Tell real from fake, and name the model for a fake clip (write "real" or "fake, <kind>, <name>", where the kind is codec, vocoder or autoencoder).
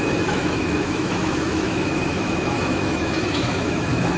fake, autoencoder, DAC-VAE